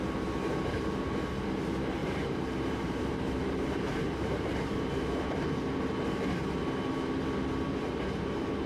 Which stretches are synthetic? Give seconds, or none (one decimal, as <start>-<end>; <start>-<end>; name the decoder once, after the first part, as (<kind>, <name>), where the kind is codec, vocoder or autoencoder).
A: 2.0-4.9 (vocoder, BigVGAN v2)